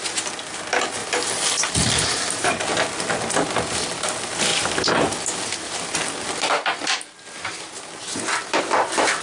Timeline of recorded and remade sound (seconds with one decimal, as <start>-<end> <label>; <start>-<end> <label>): 0.0-1.0 recorded; 1.0-1.7 remade; 1.7-9.2 recorded